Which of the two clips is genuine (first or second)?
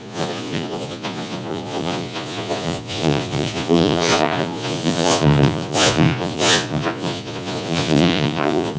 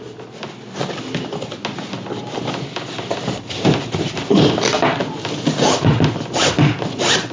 second